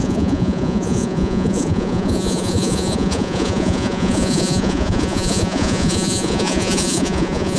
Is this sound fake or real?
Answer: fake